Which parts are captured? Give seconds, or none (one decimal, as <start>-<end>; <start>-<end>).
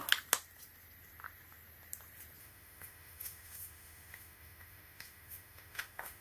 0.0-2.4